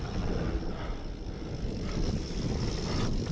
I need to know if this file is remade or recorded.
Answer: recorded